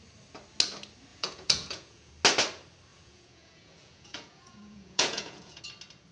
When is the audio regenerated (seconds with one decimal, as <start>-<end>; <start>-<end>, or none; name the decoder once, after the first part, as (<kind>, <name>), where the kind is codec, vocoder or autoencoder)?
1.1-2.1 (vocoder, Vocos); 2.9-5.6